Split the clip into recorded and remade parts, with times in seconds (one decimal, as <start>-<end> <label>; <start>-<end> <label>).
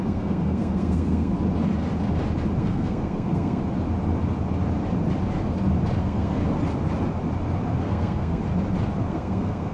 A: 0.0-1.3 remade; 1.3-2.6 recorded; 2.6-3.6 remade; 3.6-6.0 recorded; 6.0-6.4 remade; 6.4-7.8 recorded; 7.8-8.4 remade; 8.4-9.1 recorded; 9.1-9.7 remade